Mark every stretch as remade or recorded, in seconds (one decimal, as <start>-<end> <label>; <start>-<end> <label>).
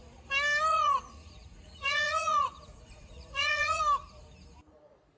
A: 0.0-0.7 recorded; 0.7-3.8 remade; 3.8-5.2 recorded